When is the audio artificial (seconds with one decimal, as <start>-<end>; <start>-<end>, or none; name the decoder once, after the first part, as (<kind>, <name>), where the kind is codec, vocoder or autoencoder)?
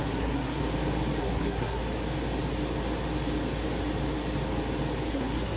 0.0-0.6 (codec, SNAC); 1.2-1.8; 5.1-5.6